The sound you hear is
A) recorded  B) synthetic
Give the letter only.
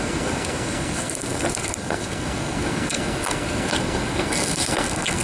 B